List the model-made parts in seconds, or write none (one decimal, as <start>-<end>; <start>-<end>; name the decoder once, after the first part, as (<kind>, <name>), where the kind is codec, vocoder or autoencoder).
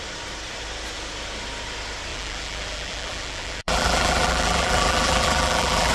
2.1-5.9 (vocoder, BigVGAN v2)